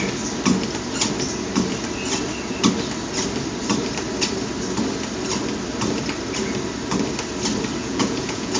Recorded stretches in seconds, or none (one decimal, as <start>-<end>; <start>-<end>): 0.0-7.8